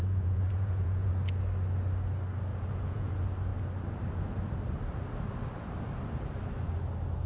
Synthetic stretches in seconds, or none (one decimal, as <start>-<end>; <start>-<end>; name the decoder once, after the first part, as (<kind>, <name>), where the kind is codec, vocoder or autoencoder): 0.0-1.1 (vocoder, Vocos); 2.5-3.1

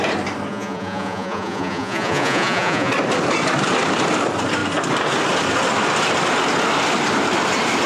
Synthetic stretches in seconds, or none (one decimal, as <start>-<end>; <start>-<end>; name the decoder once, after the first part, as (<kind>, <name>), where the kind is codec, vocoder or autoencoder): 0.5-2.9 (vocoder, Vocos)

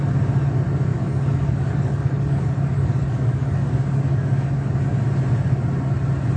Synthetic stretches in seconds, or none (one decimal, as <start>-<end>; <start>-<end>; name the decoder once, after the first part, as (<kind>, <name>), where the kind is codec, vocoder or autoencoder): 0.9-4.7 (codec, DAC)

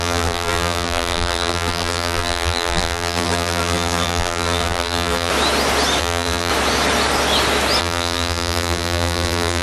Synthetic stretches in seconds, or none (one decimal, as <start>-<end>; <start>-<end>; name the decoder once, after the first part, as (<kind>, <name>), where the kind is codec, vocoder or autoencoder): 0.0-5.3 (vocoder, BigVGAN v2); 6.0-6.5; 7.8-9.6

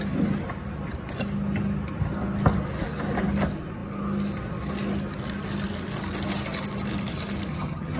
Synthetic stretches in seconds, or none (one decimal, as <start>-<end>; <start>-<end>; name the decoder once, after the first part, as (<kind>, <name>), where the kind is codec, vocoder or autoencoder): 7.5-8.0 (vocoder, HiFi-GAN)

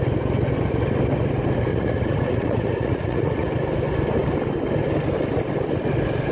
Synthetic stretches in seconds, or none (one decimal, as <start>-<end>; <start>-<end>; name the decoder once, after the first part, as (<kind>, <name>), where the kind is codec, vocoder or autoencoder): 1.7-3.5 (vocoder, Vocos)

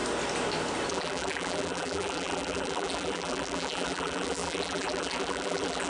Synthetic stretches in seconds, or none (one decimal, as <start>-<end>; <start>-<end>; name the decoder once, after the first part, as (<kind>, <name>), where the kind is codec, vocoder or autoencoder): 0.9-5.9 (vocoder, BigVGAN v2)

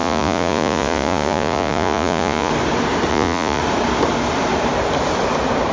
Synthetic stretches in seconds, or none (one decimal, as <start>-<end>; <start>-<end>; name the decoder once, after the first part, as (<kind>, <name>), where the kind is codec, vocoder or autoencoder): 0.0-2.5 (vocoder, Vocos); 3.1-3.6